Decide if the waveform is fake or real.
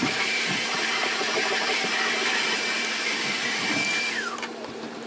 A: fake